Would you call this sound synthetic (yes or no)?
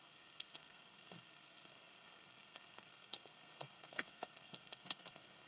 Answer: yes